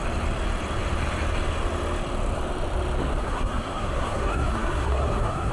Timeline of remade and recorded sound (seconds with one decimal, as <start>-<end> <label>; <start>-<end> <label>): 0.0-3.2 recorded; 3.2-5.5 remade